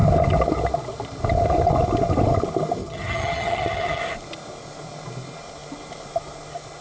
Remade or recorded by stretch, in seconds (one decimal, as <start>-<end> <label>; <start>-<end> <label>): 0.0-2.8 recorded; 2.8-4.0 remade; 4.0-6.8 recorded